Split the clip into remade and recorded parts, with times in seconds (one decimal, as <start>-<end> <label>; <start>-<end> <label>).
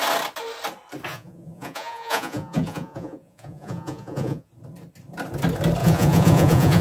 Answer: 0.0-1.1 recorded; 1.1-4.5 remade; 4.5-5.8 recorded; 5.8-6.8 remade